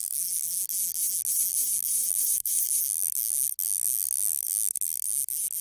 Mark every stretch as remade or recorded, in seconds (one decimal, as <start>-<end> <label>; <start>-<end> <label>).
0.0-0.6 remade; 0.6-2.0 recorded; 2.0-2.7 remade; 2.7-5.6 recorded